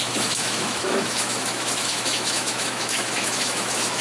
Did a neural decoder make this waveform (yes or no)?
yes